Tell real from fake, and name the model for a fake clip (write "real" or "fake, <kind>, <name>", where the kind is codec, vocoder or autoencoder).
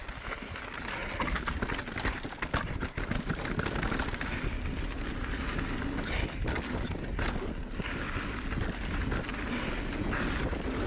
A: real